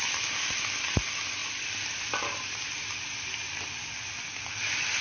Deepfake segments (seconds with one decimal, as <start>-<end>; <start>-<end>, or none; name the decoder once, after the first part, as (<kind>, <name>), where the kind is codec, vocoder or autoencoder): none